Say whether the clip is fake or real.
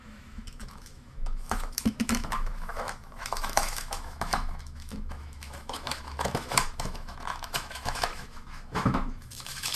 fake